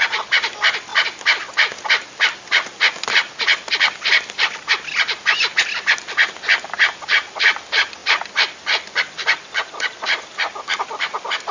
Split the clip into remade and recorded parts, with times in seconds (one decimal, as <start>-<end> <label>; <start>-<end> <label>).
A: 0.0-11.5 recorded